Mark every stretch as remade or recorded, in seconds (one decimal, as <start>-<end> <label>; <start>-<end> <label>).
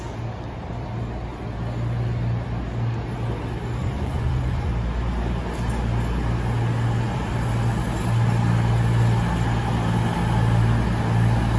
0.0-3.8 recorded; 3.8-4.7 remade; 4.7-11.6 recorded